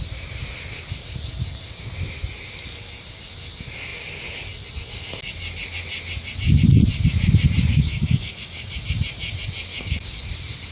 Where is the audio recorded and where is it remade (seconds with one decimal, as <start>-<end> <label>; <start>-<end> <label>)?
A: 0.0-7.7 recorded; 7.7-8.7 remade; 8.7-9.7 recorded; 9.7-10.2 remade; 10.2-10.7 recorded